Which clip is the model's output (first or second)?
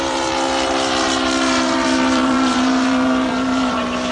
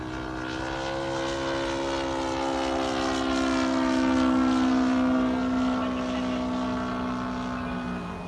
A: first